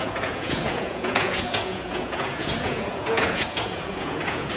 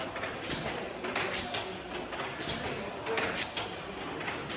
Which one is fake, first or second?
first